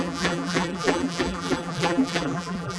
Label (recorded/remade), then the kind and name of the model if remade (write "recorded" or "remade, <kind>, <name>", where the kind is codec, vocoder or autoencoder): remade, vocoder, BigVGAN v2